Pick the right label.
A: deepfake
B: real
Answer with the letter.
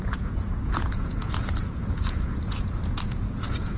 A